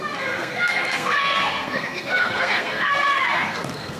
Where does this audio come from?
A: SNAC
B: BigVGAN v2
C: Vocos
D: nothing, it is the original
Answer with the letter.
A